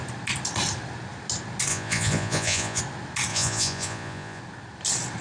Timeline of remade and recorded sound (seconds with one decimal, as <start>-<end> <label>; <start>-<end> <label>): 0.0-1.7 recorded; 1.7-2.8 remade; 2.8-3.3 recorded; 3.3-4.4 remade; 4.4-5.2 recorded